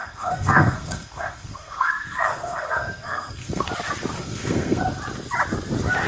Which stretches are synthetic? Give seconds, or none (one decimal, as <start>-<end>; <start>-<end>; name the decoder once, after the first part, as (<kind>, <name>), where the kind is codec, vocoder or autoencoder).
0.0-3.7 (codec, SNAC); 4.2-4.8